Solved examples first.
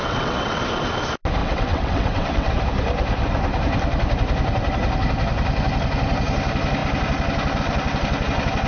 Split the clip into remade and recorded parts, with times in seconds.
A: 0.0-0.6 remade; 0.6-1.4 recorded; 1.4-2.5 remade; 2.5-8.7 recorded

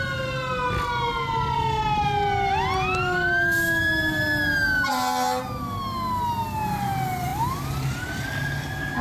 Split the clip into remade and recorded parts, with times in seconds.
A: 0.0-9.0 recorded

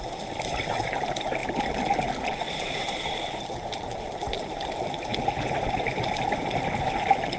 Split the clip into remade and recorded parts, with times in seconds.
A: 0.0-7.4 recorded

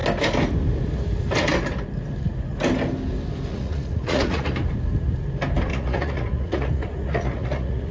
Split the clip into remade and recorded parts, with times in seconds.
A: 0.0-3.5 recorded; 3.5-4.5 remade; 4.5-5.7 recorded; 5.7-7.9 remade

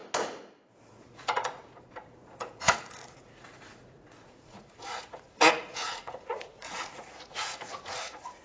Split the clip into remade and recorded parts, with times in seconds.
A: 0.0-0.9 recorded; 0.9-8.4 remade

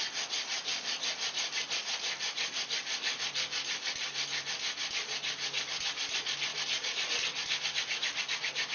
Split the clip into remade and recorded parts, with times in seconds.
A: 0.0-0.7 recorded; 0.7-3.2 remade; 3.2-6.5 recorded; 6.5-7.1 remade; 7.1-8.7 recorded